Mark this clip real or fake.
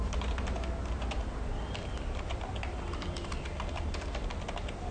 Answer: real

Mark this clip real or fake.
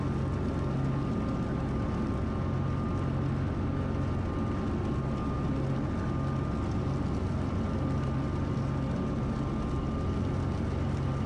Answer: real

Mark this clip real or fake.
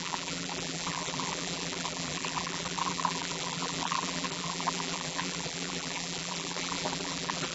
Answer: fake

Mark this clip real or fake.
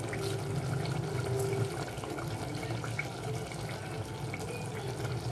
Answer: real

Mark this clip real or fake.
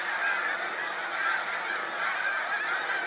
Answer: real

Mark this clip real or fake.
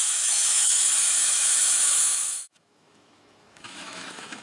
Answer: fake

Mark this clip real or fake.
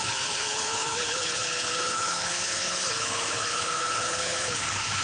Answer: fake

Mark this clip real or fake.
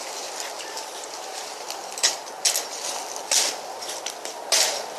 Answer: real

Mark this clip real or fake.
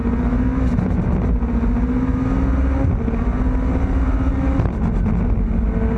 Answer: real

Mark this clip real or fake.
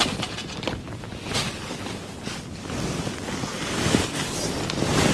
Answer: real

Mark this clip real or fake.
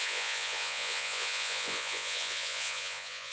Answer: fake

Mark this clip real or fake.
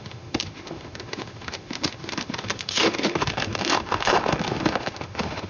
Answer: fake